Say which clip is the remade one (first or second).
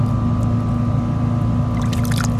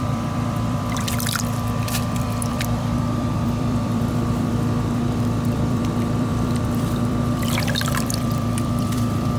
second